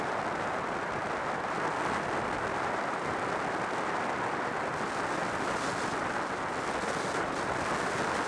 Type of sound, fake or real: real